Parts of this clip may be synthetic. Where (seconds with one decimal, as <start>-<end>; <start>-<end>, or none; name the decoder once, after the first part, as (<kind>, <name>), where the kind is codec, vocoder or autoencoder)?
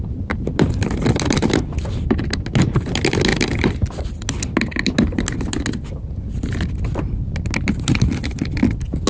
none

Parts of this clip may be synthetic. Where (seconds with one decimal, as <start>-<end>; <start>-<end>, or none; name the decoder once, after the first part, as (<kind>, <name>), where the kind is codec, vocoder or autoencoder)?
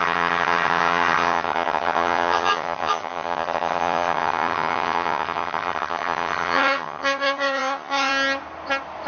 0.0-8.1 (vocoder, HiFi-GAN)